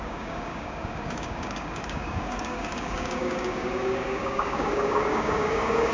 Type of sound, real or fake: fake